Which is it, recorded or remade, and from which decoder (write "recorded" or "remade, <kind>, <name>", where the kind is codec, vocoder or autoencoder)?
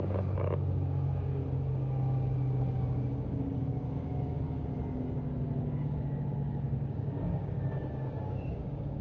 remade, codec, DAC